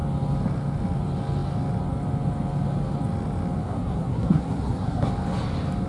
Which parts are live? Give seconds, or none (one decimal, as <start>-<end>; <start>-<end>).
0.0-3.6; 5.1-5.9